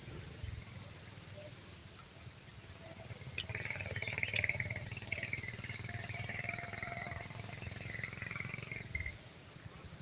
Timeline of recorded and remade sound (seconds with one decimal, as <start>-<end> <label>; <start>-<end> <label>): 0.0-1.0 remade; 1.0-4.0 recorded; 4.0-7.5 remade; 7.5-10.0 recorded